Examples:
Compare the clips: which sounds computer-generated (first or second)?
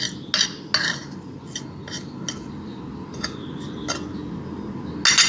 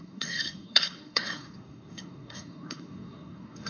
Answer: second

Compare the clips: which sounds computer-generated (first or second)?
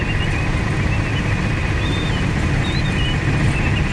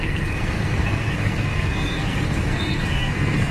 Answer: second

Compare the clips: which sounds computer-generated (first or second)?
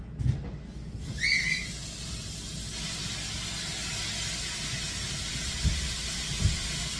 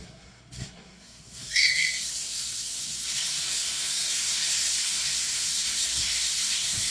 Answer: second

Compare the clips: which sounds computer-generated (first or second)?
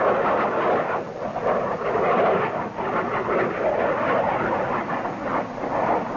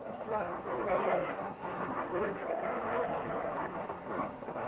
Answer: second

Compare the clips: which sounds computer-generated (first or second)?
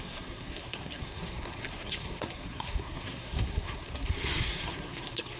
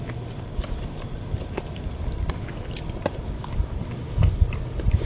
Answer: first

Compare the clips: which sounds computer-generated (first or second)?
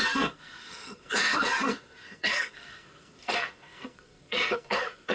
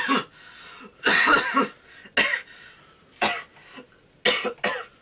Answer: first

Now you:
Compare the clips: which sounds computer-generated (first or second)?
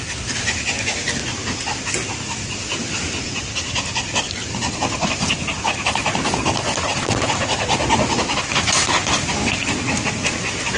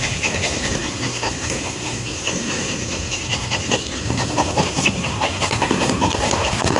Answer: second